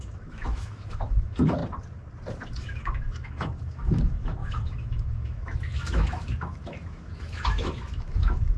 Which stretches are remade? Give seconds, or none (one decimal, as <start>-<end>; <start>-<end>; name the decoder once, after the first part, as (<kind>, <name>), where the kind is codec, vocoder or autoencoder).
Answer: 0.0-1.6 (autoencoder, DAC-VAE); 2.5-8.6